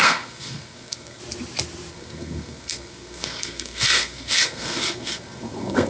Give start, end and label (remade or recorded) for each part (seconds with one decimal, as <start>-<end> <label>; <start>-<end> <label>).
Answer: 0.0-1.2 remade; 1.2-1.9 recorded; 1.9-5.9 remade